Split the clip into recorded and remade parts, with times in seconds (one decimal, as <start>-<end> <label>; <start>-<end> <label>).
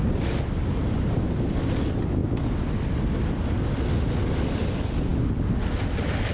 0.0-6.3 recorded